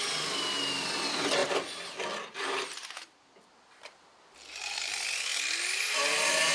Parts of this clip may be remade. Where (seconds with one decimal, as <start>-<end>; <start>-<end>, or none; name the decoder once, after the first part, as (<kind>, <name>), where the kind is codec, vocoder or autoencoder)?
none